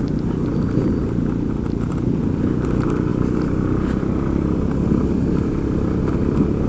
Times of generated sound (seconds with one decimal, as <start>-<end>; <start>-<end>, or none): none